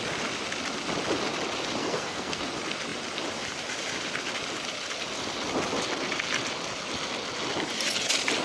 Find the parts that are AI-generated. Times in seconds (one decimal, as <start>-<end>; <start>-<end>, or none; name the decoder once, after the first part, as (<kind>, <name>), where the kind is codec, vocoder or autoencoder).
1.8-2.4 (codec, SNAC)